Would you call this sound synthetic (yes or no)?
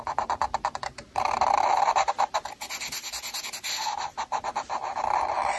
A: no